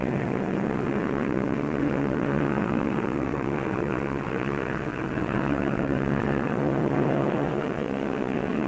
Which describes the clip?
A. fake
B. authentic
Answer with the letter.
A